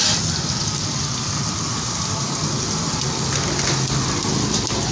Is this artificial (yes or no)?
no